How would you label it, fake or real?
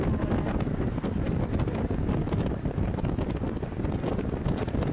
real